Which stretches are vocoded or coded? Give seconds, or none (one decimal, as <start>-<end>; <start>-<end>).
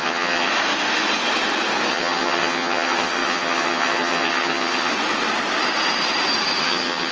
0.0-0.5; 1.9-4.9; 6.6-7.1